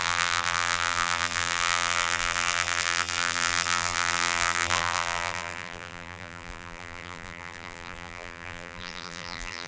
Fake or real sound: fake